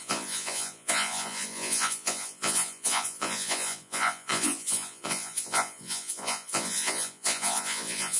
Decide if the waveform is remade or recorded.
remade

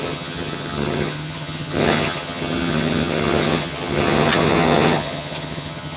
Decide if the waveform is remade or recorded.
remade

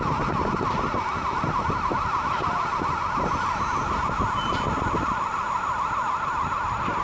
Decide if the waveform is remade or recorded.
recorded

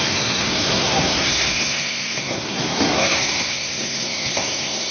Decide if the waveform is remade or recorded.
remade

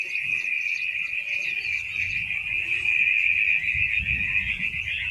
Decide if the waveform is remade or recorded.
recorded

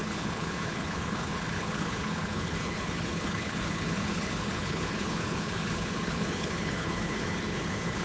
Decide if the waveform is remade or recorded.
remade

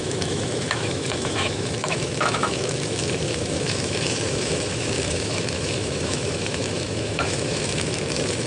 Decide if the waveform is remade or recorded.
remade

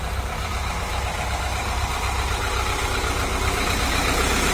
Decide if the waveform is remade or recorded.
remade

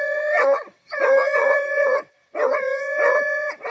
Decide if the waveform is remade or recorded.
remade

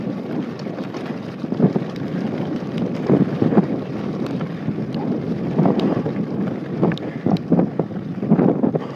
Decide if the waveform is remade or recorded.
recorded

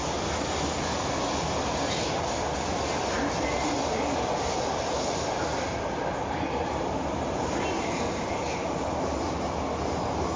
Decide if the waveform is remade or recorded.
recorded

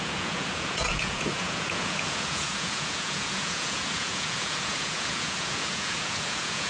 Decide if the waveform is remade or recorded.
remade